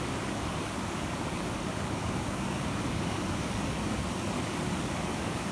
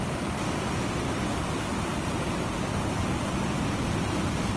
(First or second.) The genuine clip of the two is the second